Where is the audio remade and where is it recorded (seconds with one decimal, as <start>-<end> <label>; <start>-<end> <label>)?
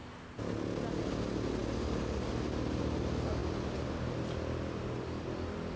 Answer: 0.0-5.8 recorded